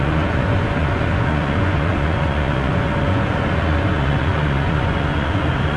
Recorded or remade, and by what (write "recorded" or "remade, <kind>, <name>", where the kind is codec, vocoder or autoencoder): remade, vocoder, Vocos